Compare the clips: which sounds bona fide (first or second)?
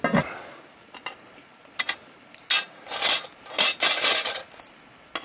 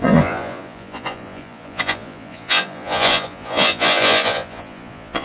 first